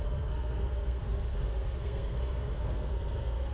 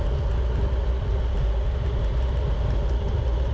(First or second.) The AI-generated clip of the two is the first